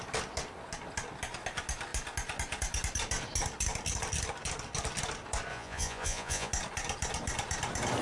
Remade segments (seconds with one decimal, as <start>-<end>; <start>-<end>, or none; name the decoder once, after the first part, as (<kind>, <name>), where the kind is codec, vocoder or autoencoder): 5.5-6.5 (vocoder, Vocos)